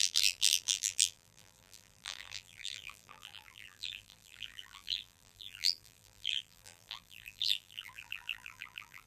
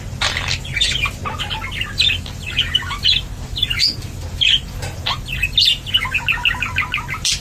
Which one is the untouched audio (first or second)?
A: second